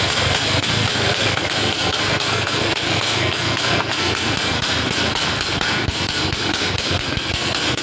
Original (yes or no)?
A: no